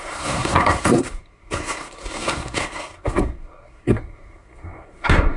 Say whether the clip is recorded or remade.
remade